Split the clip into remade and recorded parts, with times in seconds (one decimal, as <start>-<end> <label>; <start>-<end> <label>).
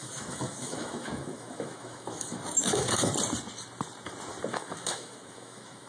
0.0-3.1 remade; 3.1-4.5 recorded; 4.5-5.9 remade